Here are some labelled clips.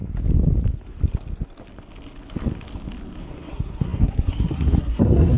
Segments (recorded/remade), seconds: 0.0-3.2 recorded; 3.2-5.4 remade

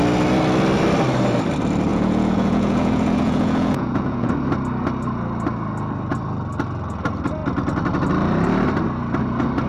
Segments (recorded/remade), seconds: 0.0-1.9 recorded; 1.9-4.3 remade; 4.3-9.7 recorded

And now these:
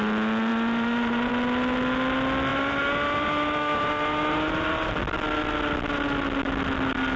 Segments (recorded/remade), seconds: 0.0-0.5 recorded; 0.5-1.3 remade; 1.3-2.5 recorded; 2.5-4.9 remade; 4.9-7.2 recorded

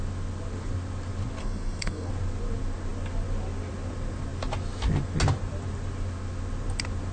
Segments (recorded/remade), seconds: 0.0-1.4 recorded; 1.4-2.1 remade; 2.1-7.1 recorded

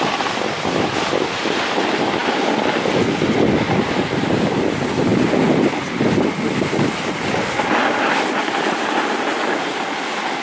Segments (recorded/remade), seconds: 0.0-10.4 recorded

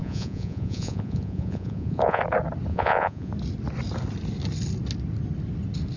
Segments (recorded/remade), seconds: 0.0-2.2 remade; 2.2-2.7 recorded; 2.7-3.3 remade; 3.3-6.0 recorded